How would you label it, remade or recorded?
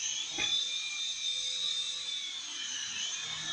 recorded